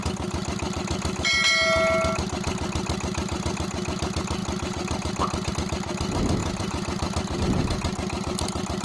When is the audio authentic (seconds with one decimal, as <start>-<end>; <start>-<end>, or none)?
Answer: 0.0-6.4; 7.4-8.8